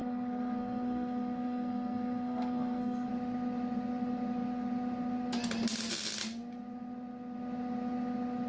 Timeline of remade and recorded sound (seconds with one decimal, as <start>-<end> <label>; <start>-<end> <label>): 0.0-3.1 remade; 3.1-8.5 recorded

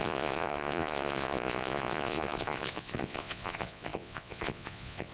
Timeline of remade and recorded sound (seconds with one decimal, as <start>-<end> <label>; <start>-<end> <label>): 0.0-5.1 remade

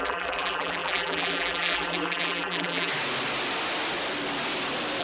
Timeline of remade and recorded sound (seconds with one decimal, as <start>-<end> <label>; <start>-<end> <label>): 0.0-2.9 remade; 2.9-5.0 recorded

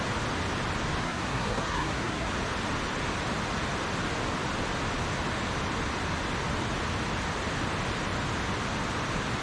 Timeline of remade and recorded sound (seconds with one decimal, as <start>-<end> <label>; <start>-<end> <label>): 0.0-1.0 recorded; 1.0-2.3 remade; 2.3-9.4 recorded

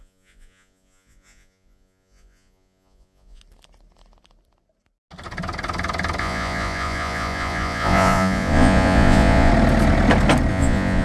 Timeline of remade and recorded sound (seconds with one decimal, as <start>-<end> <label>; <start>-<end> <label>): 0.0-3.4 remade; 3.4-6.2 recorded; 6.2-9.5 remade; 9.5-10.5 recorded; 10.5-11.0 remade

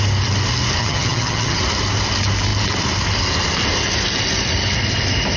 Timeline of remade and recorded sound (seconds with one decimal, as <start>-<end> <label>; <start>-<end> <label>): 0.0-0.8 recorded; 0.8-1.6 remade; 1.6-5.4 recorded